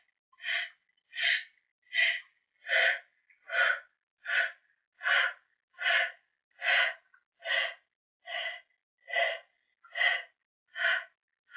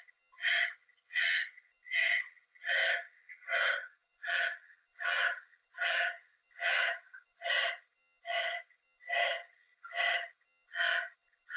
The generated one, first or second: second